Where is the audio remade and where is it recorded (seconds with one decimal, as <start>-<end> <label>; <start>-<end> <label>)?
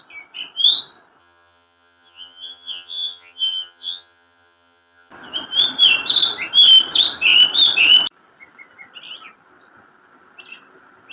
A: 0.0-1.2 recorded; 1.2-5.1 remade; 5.1-11.1 recorded